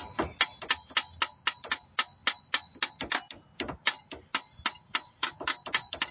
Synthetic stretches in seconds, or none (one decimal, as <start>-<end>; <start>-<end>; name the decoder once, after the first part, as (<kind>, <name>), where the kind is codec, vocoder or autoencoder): none